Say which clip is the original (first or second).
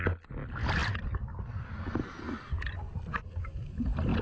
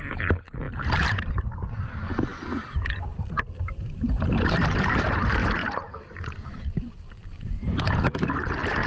first